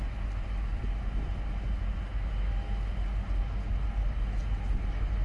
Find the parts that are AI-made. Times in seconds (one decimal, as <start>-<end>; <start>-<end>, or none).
none